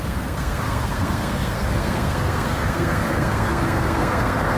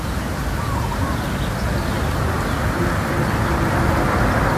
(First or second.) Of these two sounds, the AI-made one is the first